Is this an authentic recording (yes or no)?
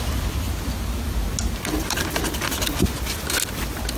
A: yes